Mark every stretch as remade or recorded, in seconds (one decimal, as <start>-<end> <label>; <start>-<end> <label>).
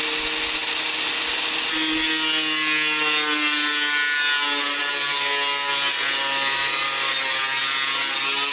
0.0-8.5 recorded